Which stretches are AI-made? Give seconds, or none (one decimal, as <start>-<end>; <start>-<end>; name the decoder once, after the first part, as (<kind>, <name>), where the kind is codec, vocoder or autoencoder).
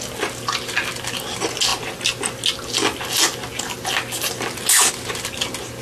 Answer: none